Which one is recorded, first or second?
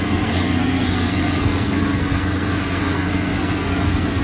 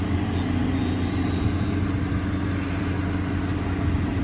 second